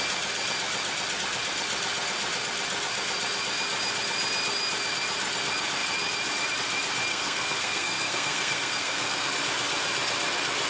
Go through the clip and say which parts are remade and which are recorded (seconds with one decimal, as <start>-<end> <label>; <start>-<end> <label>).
0.0-7.1 recorded; 7.1-9.3 remade; 9.3-10.7 recorded